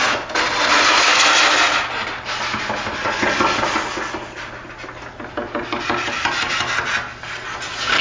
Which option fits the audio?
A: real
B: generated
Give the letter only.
A